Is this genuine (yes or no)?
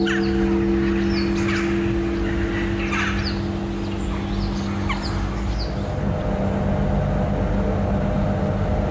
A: yes